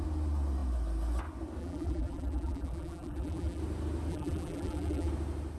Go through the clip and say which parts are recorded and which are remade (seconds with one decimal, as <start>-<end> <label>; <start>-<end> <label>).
0.0-1.6 recorded; 1.6-3.6 remade; 3.6-4.1 recorded; 4.1-5.1 remade; 5.1-5.6 recorded